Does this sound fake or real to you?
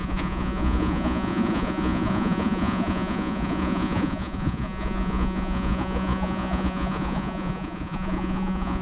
fake